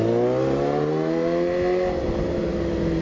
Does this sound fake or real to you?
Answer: real